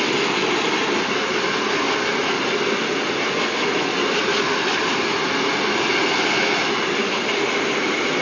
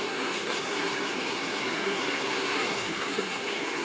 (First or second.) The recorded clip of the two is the first